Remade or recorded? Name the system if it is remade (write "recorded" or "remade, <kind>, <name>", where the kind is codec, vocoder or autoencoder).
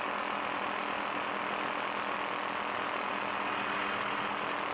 recorded